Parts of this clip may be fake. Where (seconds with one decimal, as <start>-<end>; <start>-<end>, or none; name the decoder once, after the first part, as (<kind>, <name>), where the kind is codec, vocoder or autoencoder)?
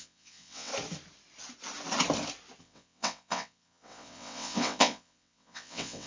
0.0-0.7 (vocoder, WaveNeXt); 2.6-6.1